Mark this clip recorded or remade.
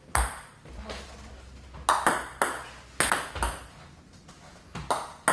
recorded